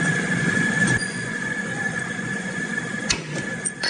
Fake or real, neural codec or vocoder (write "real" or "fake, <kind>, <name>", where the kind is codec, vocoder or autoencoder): fake, vocoder, Vocos